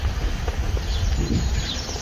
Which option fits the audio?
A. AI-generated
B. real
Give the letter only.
B